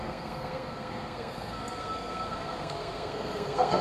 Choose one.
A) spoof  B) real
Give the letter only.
A